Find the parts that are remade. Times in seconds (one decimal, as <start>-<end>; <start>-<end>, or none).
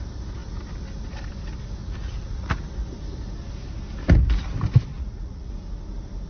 1.8-2.5; 4.9-5.5